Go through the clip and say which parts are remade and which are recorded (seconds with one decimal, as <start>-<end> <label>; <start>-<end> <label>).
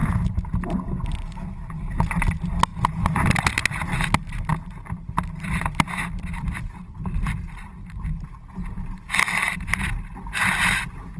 0.0-11.2 recorded